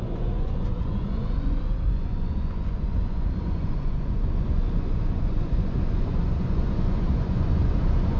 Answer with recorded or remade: remade